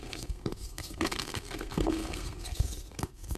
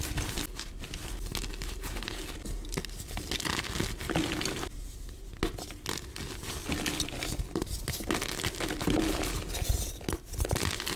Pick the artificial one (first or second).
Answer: first